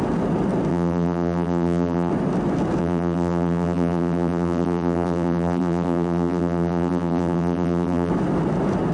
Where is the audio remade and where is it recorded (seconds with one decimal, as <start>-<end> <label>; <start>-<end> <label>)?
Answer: 0.0-0.7 recorded; 0.7-2.1 remade; 2.1-2.8 recorded; 2.8-8.1 remade; 8.1-8.9 recorded